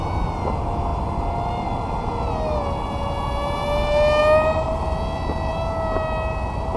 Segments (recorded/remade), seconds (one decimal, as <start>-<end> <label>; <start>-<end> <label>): 0.0-6.8 recorded